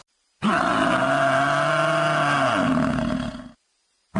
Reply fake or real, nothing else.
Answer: real